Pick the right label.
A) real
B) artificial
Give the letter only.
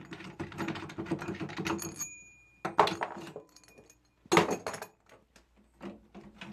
A